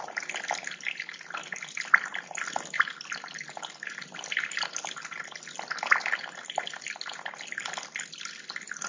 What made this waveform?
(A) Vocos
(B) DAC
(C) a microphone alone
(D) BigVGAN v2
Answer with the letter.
C